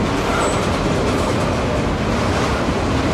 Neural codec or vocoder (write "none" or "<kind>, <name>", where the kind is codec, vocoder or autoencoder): none